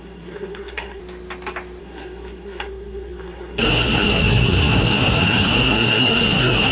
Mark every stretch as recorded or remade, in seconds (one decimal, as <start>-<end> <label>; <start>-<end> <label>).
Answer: 0.0-1.0 remade; 1.0-1.8 recorded; 1.8-6.7 remade